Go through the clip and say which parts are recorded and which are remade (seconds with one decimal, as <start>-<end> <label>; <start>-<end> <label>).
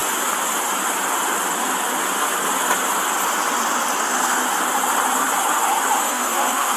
0.0-4.0 recorded; 4.0-4.4 remade; 4.4-6.0 recorded; 6.0-6.8 remade